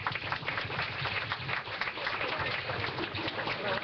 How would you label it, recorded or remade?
recorded